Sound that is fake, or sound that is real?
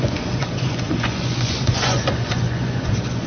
fake